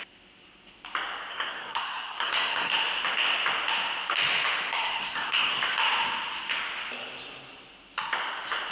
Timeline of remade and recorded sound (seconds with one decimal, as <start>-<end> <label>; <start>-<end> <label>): 0.0-1.3 recorded; 1.3-2.7 remade; 2.7-4.7 recorded; 4.7-5.5 remade; 5.5-8.7 recorded